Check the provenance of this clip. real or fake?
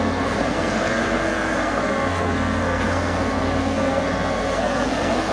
fake